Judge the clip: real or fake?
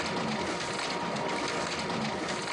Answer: real